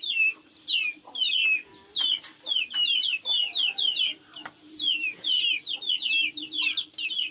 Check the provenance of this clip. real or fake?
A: real